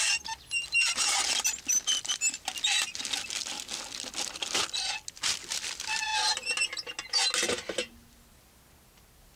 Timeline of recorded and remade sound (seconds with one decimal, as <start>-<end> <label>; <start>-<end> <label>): 0.0-9.4 recorded